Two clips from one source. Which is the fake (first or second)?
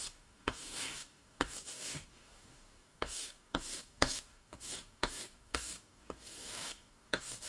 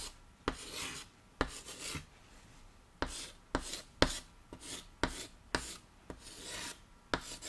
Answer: first